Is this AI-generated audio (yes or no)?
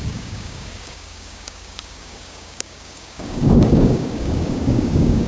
yes